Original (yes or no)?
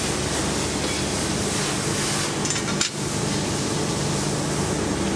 yes